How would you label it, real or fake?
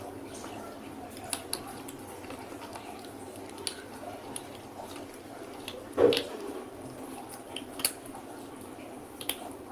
real